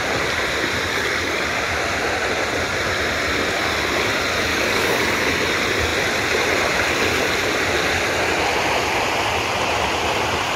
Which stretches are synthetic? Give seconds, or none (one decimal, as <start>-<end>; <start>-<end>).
0.9-1.6; 4.5-5.3